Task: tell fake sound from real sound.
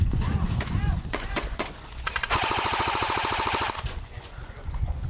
fake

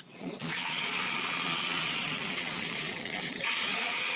fake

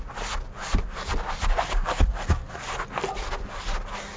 real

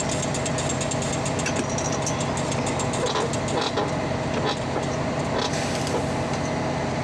real